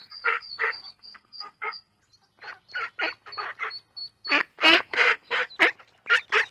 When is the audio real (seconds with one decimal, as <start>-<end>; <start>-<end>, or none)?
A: 2.0-4.5; 5.5-6.5

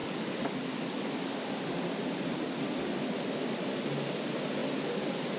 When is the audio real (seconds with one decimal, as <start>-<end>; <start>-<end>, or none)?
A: 0.0-5.4

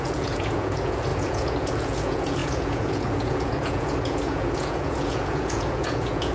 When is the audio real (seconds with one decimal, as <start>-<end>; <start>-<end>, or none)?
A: none

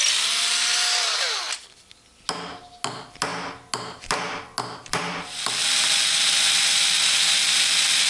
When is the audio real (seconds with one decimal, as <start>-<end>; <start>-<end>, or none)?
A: 0.0-8.1

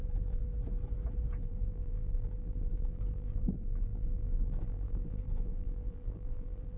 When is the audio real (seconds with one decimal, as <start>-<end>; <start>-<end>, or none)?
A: 0.4-1.4

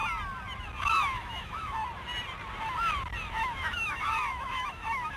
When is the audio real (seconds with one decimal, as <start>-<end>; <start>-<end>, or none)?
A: 0.0-0.8; 1.8-3.3

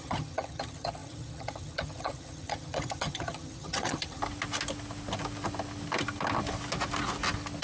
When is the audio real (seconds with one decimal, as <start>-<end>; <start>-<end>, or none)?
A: 4.2-7.6

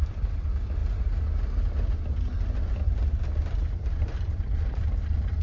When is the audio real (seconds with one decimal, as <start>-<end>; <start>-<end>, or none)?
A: 0.0-5.4